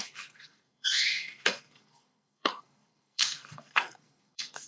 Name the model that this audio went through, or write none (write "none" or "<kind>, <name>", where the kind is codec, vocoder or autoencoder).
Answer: codec, SNAC